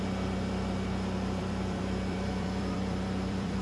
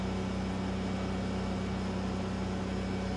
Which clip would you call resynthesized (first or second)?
first